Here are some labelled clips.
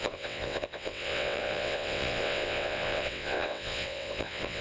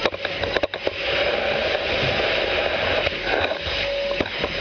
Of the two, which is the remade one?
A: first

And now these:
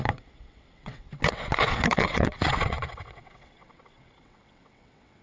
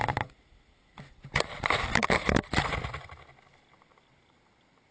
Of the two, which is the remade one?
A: first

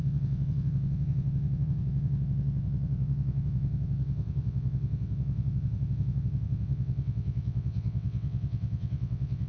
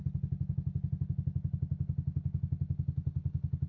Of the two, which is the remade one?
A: first